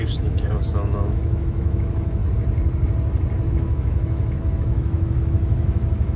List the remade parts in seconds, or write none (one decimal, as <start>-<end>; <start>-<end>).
0.0-2.2; 3.5-6.2